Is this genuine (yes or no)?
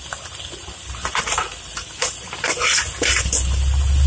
yes